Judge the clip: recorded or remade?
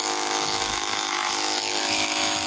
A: remade